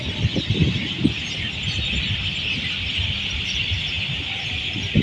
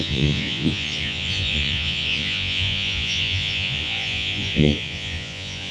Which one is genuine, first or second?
first